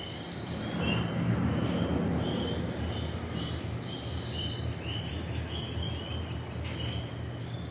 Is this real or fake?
real